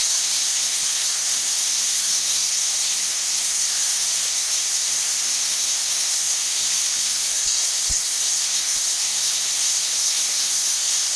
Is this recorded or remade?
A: remade